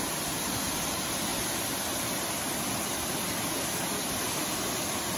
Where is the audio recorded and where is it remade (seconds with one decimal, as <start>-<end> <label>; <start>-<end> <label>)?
0.0-5.2 recorded